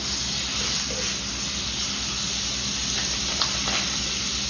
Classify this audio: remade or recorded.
recorded